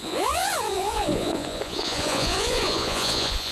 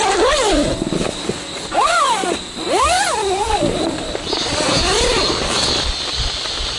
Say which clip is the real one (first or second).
second